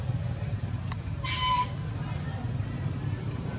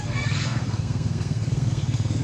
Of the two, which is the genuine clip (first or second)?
first